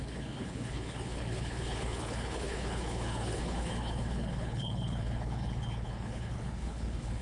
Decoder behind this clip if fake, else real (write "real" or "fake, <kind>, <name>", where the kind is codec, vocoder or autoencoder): fake, codec, HILCodec